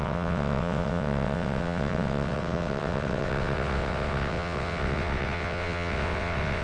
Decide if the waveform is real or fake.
fake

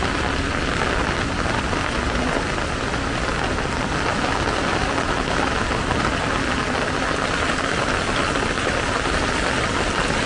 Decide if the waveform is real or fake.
real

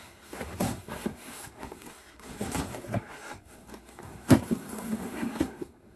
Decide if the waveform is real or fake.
fake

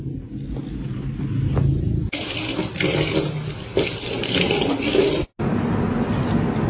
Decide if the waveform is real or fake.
real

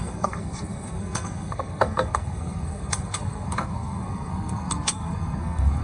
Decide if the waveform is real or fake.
fake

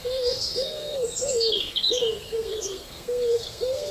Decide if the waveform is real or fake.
fake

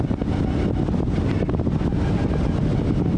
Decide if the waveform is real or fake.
real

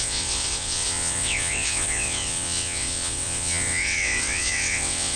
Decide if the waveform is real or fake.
fake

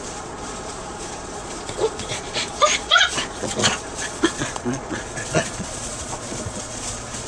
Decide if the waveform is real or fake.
fake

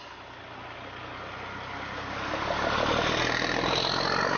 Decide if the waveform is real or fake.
real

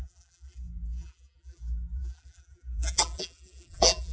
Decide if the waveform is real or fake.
fake